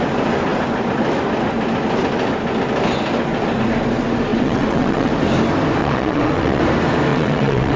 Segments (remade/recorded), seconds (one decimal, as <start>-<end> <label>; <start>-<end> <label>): 0.0-4.3 recorded; 4.3-5.1 remade; 5.1-5.8 recorded; 5.8-6.6 remade; 6.6-7.1 recorded; 7.1-7.8 remade